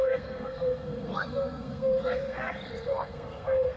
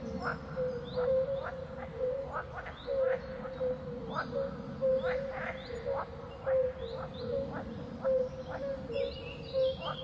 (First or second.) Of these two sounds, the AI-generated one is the first